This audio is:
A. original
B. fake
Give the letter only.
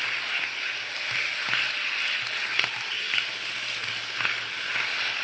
A